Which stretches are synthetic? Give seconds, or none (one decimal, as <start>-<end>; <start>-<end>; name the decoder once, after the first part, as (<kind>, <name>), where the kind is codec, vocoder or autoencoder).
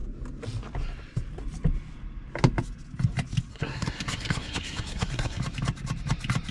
3.5-5.4 (codec, SNAC)